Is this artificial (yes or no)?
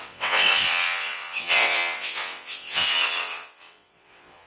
yes